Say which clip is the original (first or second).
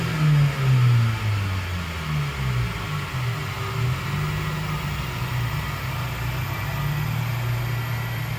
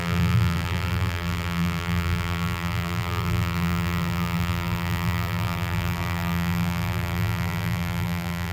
first